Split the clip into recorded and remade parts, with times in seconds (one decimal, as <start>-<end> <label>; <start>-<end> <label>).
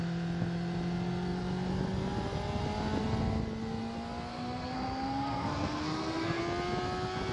0.0-4.3 recorded; 4.3-6.4 remade; 6.4-7.3 recorded